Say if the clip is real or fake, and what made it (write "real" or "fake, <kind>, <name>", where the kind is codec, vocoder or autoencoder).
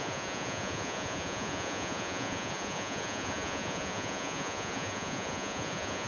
fake, vocoder, Vocos